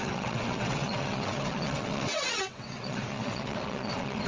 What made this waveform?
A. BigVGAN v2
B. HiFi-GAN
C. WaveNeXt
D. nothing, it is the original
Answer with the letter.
C